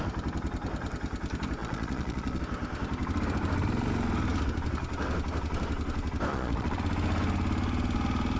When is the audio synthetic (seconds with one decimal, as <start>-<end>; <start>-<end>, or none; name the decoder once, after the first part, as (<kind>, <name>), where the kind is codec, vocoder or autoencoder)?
1.6-2.4 (vocoder, Vocos); 6.3-6.8